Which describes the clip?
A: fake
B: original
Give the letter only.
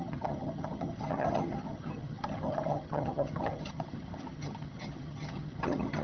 A